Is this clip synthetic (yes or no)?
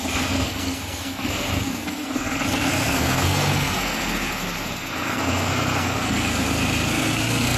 yes